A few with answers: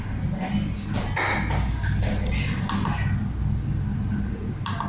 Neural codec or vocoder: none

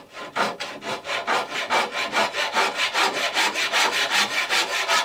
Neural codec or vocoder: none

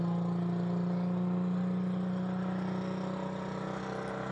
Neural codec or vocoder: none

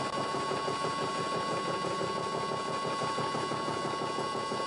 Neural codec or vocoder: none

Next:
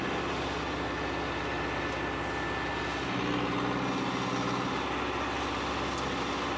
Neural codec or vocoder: none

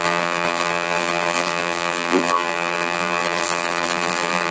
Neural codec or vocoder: vocoder, BigVGAN v2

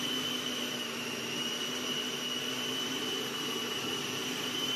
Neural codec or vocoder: vocoder, BigVGAN v2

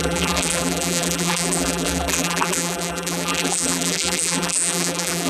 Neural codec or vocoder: vocoder, BigVGAN v2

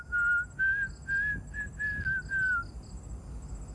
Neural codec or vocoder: none